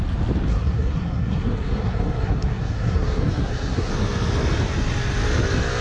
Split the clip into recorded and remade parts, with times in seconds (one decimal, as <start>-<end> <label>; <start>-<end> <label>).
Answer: 0.0-0.5 recorded; 0.5-3.9 remade; 3.9-5.8 recorded